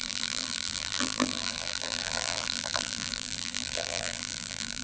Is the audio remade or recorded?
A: remade